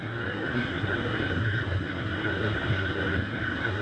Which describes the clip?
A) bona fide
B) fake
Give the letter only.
B